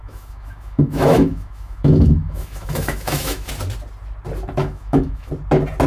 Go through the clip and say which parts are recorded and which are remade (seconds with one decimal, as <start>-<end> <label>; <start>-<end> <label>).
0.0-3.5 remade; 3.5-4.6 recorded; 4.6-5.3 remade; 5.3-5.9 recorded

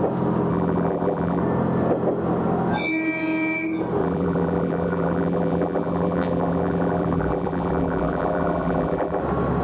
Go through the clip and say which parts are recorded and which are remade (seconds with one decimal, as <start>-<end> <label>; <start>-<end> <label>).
0.0-0.5 recorded; 0.5-1.4 remade; 1.4-4.0 recorded; 4.0-9.2 remade; 9.2-9.6 recorded

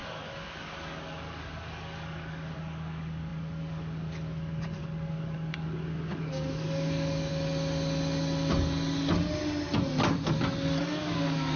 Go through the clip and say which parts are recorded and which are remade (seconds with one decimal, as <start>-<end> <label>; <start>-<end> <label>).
0.0-7.3 remade; 7.3-10.8 recorded; 10.8-11.6 remade

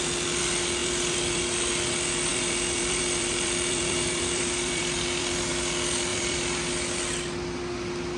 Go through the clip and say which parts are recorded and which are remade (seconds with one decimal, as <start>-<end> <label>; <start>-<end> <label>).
0.0-0.8 recorded; 0.8-1.4 remade; 1.4-2.3 recorded; 2.3-5.5 remade; 5.5-6.1 recorded; 6.1-6.7 remade; 6.7-8.2 recorded

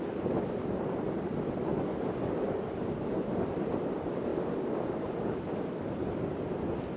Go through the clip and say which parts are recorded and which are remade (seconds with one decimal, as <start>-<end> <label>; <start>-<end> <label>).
0.0-7.0 recorded

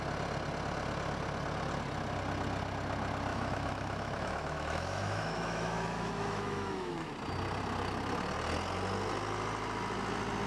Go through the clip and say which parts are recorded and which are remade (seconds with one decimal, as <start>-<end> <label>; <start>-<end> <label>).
0.0-3.3 recorded; 3.3-7.1 remade; 7.1-10.5 recorded

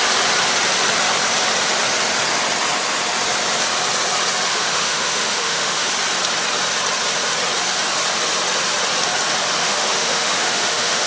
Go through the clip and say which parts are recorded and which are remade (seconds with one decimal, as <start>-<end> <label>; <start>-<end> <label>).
0.0-4.5 recorded; 4.5-5.9 remade; 5.9-9.6 recorded; 9.6-11.1 remade

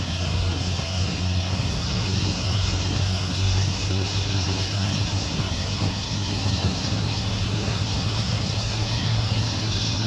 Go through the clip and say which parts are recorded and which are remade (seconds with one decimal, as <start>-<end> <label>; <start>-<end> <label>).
0.0-10.1 remade